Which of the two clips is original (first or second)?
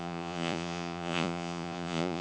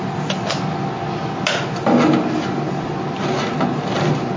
second